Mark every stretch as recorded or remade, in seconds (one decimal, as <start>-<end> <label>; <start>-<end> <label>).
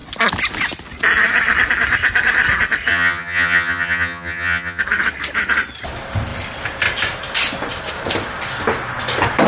0.0-2.9 recorded; 2.9-4.8 remade; 4.8-9.5 recorded